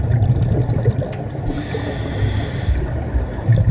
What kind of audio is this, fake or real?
real